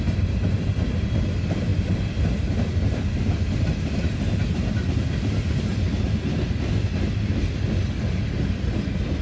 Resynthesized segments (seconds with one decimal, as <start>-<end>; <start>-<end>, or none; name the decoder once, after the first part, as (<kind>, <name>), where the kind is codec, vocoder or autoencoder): none